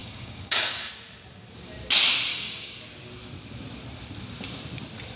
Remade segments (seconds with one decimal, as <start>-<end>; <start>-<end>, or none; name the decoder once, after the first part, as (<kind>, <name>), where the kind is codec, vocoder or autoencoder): 0.0-0.9 (codec, DAC); 2.3-2.8